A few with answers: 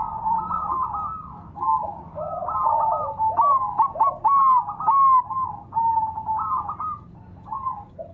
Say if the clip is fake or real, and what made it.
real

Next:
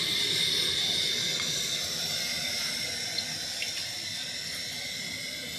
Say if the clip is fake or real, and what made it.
real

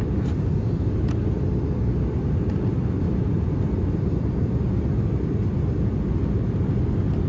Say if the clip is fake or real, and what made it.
real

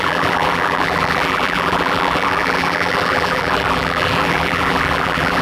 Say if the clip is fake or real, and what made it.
fake, vocoder, BigVGAN v2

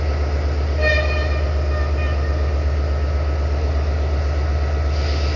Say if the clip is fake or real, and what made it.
real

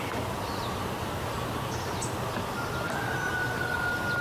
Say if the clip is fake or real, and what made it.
real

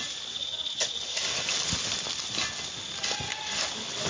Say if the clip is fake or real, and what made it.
real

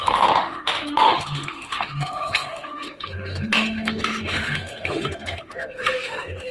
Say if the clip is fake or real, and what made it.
fake, autoencoder, DAC-VAE